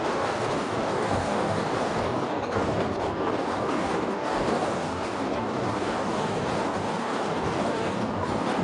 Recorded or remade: remade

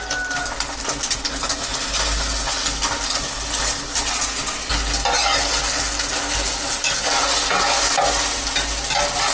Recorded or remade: recorded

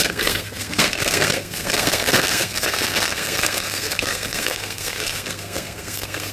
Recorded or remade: remade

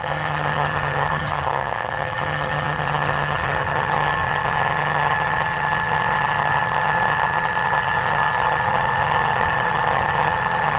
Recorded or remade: remade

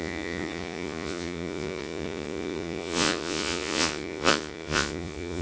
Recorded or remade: remade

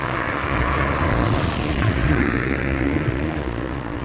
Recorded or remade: remade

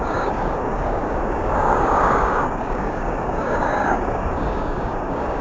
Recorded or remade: remade